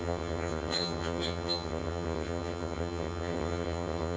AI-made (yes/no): yes